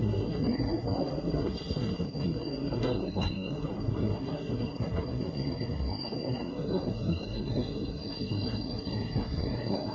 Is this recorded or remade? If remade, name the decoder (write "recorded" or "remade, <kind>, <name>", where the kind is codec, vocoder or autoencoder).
remade, codec, SNAC